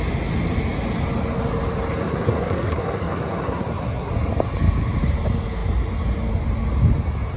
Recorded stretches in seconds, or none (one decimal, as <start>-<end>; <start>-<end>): 0.0-2.0; 4.1-7.4